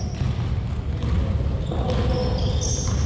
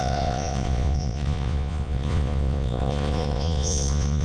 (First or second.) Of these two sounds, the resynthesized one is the second